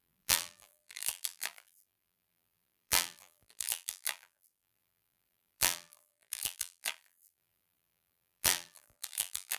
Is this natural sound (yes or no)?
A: no